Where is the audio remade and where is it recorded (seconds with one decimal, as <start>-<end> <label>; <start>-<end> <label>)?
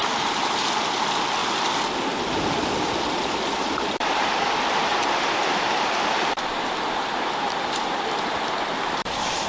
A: 0.0-1.4 remade; 1.4-2.5 recorded; 2.5-9.5 remade